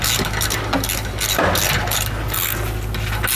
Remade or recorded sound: recorded